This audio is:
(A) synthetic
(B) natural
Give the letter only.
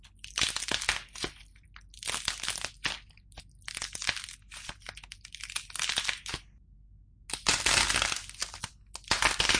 B